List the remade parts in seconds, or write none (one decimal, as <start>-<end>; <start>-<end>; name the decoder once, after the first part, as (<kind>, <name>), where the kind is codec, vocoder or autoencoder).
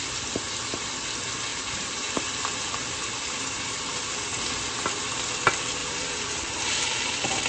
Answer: 1.5-3.8 (vocoder, BigVGAN v2); 5.8-7.1